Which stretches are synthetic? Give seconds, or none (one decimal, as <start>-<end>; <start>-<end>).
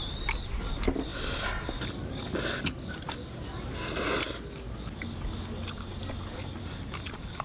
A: none